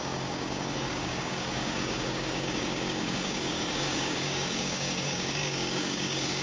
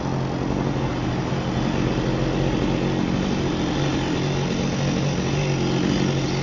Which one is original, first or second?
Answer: second